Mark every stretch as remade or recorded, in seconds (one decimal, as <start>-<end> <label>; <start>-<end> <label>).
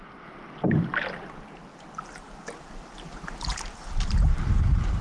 0.0-5.0 recorded